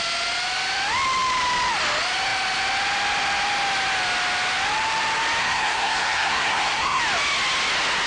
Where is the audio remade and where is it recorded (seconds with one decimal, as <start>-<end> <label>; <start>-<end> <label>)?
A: 0.0-5.4 recorded; 5.4-7.0 remade; 7.0-8.1 recorded